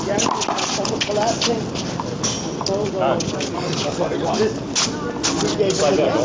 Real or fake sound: real